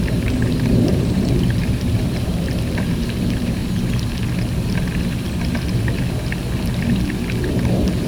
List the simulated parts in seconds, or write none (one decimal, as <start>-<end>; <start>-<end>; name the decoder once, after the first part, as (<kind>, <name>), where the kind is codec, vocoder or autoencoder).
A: 0.0-3.6 (vocoder, BigVGAN v2); 7.5-8.1